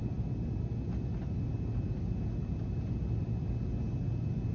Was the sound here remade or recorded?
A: recorded